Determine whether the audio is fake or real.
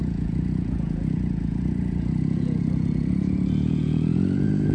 fake